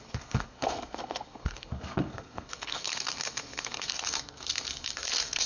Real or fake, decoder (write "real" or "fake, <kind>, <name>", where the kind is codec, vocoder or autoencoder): fake, codec, SNAC